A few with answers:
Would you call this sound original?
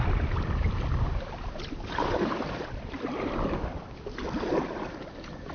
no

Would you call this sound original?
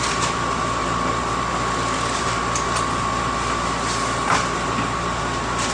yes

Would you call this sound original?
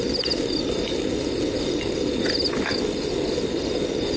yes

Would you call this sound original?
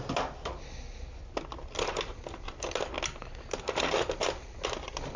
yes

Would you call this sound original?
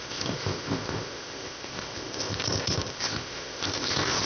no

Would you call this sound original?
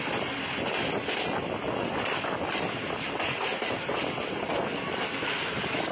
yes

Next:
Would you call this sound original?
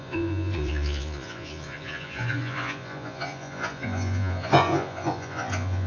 no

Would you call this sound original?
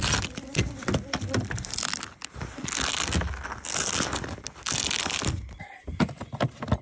yes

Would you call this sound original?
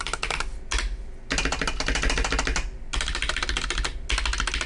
yes